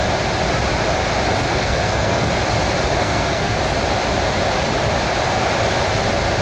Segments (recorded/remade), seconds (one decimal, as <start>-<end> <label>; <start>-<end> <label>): 0.0-1.5 recorded; 1.5-2.3 remade; 2.3-3.0 recorded; 3.0-3.6 remade; 3.6-6.4 recorded